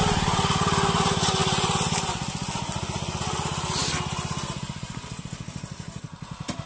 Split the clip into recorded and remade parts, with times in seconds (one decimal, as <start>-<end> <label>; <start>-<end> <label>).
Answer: 0.0-6.7 recorded